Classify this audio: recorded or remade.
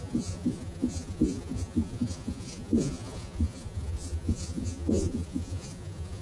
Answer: remade